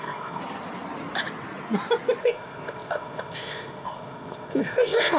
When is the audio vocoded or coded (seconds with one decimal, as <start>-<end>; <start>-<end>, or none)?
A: 0.0-0.4; 2.2-5.2